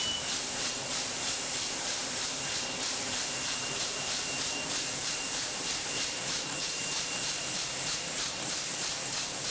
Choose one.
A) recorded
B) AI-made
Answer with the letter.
B